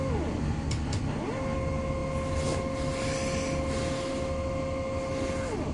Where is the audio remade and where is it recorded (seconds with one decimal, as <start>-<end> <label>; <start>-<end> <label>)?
0.0-5.7 recorded